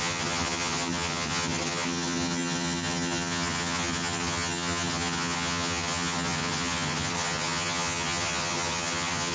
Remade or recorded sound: remade